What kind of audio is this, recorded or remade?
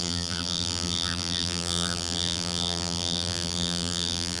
remade